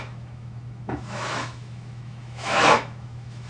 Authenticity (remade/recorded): remade